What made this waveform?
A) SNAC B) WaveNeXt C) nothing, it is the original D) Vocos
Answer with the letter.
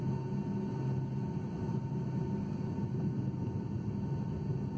C